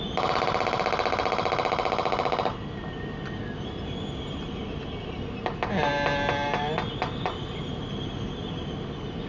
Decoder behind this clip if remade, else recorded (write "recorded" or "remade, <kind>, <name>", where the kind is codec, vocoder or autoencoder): recorded